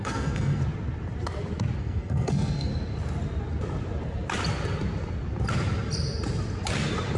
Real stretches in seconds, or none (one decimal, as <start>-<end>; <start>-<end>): 0.6-1.8; 2.7-7.2